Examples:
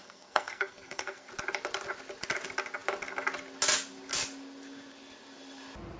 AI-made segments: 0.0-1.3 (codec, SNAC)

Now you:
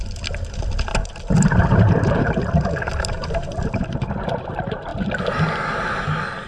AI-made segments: 1.0-4.2 (vocoder, BigVGAN v2)